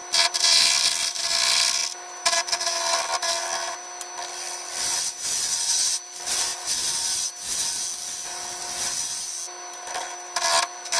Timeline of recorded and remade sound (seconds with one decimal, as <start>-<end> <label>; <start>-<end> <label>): 0.0-11.0 recorded